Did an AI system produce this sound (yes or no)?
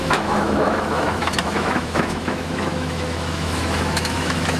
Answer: yes